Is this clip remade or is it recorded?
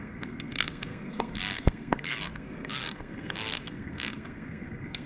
remade